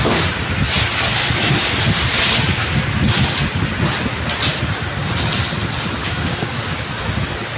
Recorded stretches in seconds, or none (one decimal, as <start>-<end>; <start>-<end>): 0.0-6.0; 6.9-7.6